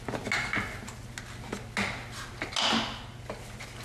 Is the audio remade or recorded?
recorded